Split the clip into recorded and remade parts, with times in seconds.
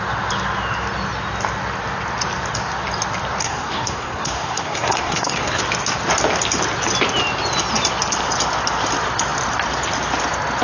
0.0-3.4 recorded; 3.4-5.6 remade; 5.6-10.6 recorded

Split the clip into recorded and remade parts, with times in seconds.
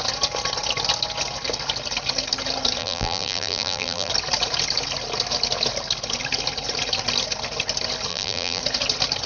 0.0-2.8 recorded; 2.8-4.1 remade; 4.1-8.1 recorded; 8.1-8.6 remade; 8.6-9.3 recorded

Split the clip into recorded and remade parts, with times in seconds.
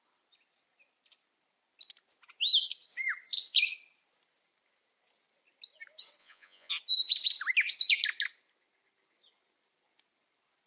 0.0-6.2 recorded; 6.2-6.7 remade; 6.7-10.7 recorded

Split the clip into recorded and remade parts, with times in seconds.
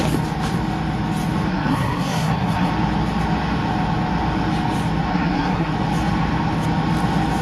0.0-1.5 recorded; 1.5-2.7 remade; 2.7-5.1 recorded; 5.1-5.7 remade; 5.7-7.4 recorded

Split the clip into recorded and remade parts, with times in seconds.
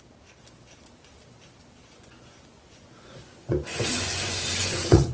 0.0-1.8 recorded; 1.8-5.1 remade